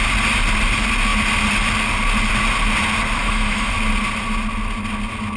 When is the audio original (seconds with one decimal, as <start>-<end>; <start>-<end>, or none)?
0.0-3.2; 3.7-5.4